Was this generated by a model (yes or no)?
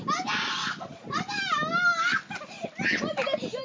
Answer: no